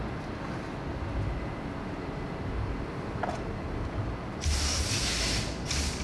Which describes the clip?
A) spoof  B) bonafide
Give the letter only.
B